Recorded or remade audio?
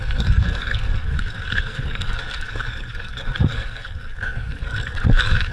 remade